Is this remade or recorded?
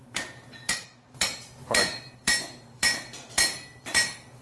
remade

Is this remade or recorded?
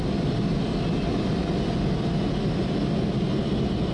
recorded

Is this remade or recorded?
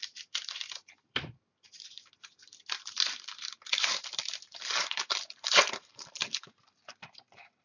remade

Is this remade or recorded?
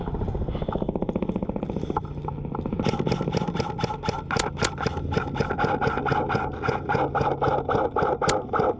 recorded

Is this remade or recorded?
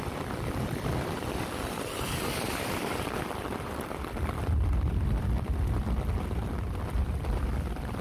remade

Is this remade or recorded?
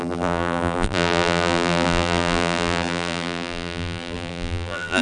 remade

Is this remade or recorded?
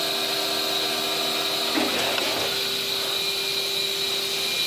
recorded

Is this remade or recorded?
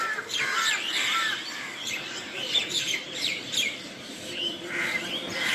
remade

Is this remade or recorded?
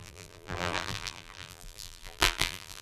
remade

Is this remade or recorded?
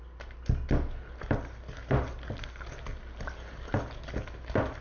recorded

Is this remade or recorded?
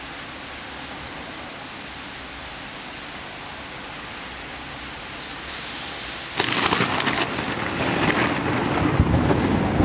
recorded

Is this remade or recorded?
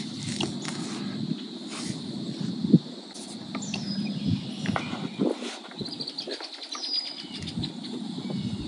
recorded